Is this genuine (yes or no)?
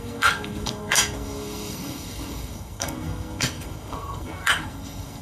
no